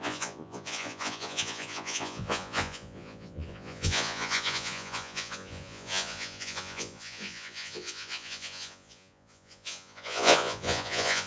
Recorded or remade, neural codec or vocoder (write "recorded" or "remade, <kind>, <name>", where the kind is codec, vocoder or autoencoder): remade, vocoder, Vocos